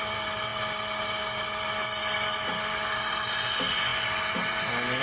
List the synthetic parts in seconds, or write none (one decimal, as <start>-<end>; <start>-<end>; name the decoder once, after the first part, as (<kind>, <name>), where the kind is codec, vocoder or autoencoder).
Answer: none